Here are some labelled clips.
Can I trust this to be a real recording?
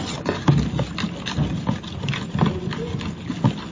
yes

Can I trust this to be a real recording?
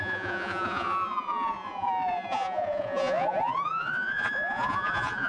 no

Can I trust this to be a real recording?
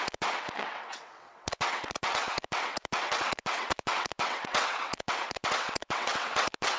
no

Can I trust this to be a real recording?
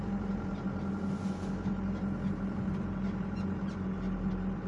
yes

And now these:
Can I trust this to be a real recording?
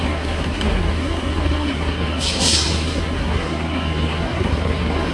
no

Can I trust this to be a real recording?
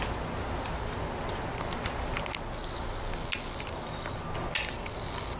yes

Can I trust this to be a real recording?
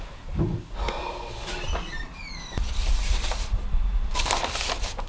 no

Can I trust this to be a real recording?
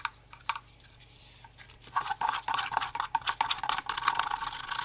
yes